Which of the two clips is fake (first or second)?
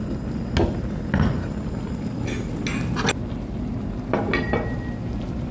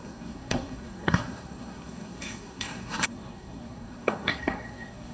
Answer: second